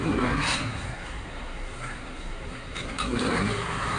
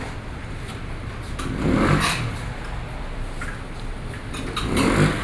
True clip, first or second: second